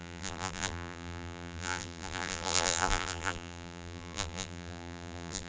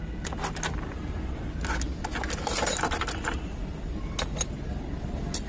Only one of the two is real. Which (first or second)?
second